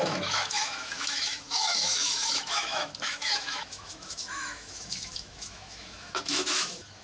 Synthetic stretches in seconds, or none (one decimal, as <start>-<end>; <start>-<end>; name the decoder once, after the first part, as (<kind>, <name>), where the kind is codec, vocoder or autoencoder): 0.0-7.0 (autoencoder, DAC-VAE)